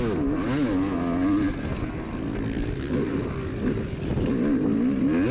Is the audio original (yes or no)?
yes